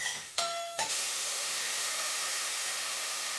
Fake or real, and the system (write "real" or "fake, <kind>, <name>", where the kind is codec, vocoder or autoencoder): fake, autoencoder, DAC-VAE